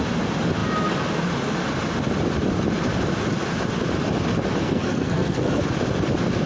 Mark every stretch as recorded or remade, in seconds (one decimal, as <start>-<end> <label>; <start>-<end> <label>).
0.0-4.6 recorded; 4.6-5.6 remade; 5.6-6.5 recorded